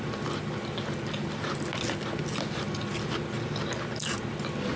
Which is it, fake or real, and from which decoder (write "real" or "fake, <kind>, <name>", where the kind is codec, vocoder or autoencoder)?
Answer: real